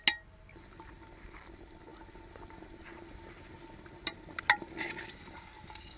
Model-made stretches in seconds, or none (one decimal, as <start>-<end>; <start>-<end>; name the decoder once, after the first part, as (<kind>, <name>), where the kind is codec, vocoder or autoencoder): none

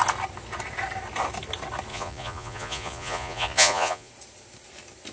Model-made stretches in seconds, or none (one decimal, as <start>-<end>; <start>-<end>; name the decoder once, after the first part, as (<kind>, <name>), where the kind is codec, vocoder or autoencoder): 1.9-4.1 (vocoder, Vocos)

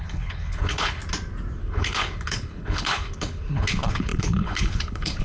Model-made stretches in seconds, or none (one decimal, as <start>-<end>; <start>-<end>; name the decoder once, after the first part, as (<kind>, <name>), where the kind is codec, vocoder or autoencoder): 0.0-1.0 (codec, HILCodec); 1.6-5.2

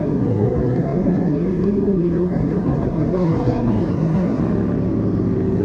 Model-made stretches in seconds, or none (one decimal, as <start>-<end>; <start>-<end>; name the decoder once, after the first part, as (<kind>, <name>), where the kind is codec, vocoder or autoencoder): 0.0-4.4 (codec, SNAC)

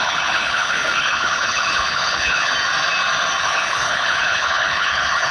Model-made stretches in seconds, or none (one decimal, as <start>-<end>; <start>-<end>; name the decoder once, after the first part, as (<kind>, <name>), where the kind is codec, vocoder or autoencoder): 0.0-2.5 (codec, HILCodec); 3.4-5.3

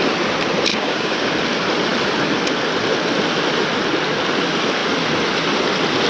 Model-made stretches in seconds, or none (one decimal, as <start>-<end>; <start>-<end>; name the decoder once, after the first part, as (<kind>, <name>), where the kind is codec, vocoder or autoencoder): 0.7-1.3 (codec, DAC)

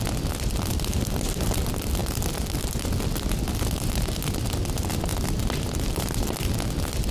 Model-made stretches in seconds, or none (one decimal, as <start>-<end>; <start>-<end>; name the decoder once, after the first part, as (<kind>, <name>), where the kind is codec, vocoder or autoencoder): 2.0-2.6 (vocoder, BigVGAN v2)